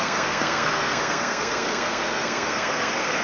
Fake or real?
fake